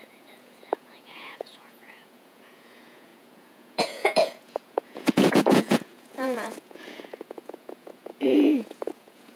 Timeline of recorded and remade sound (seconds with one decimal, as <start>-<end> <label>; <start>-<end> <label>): 0.0-9.4 remade